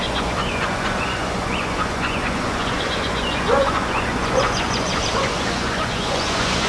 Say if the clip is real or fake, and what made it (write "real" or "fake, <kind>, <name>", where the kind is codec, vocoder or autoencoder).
fake, vocoder, Vocos